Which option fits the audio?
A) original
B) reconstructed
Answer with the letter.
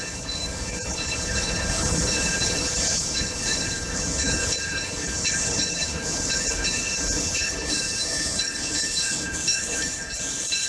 B